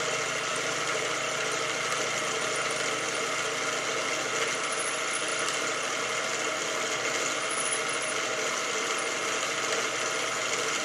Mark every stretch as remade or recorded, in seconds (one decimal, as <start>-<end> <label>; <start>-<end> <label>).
0.0-0.5 recorded; 0.5-2.1 remade; 2.1-5.3 recorded; 5.3-6.0 remade; 6.0-9.2 recorded; 9.2-9.7 remade; 9.7-10.8 recorded